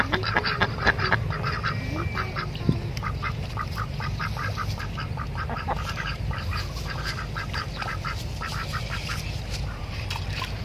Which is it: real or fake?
fake